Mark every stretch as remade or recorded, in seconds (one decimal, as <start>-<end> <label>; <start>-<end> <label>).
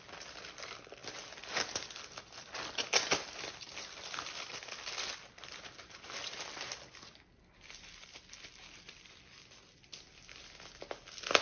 0.0-11.4 recorded